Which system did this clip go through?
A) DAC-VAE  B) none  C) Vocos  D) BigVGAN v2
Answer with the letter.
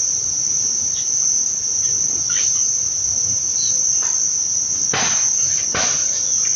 D